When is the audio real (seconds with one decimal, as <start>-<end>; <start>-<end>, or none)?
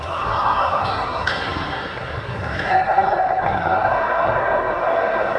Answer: none